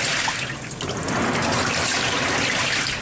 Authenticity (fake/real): real